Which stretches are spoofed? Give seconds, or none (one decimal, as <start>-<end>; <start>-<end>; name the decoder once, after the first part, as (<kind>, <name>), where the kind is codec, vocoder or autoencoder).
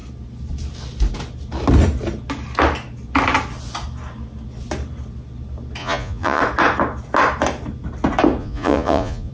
5.8-6.4 (vocoder, Vocos); 8.4-9.3